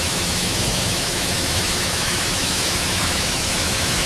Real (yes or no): no